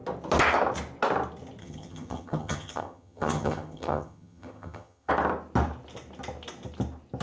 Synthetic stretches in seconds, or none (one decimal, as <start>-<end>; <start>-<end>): 1.6-5.1